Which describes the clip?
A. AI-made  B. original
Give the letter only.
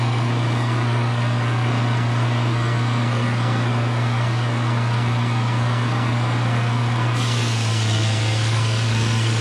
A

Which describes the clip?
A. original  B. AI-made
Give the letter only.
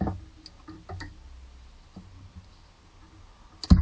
A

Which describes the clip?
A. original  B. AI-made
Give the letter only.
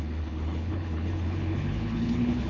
B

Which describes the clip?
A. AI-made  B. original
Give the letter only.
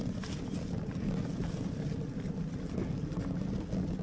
B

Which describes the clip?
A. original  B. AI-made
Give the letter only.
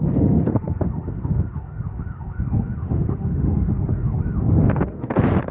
B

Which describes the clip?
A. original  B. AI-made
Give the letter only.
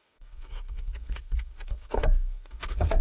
B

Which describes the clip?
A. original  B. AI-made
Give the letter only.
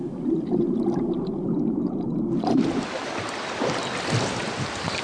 A